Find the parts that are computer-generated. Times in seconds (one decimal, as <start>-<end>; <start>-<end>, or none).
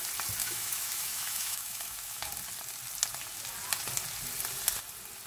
0.4-2.3